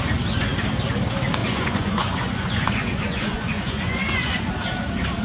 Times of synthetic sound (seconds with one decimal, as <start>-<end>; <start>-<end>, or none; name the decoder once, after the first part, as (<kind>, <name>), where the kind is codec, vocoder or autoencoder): 1.4-4.4 (vocoder, Vocos)